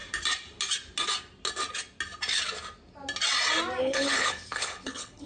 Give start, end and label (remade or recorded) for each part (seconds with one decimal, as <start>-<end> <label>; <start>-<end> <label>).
0.0-3.8 recorded; 3.8-5.3 remade